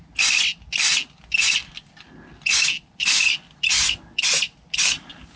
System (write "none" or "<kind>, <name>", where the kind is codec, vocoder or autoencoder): none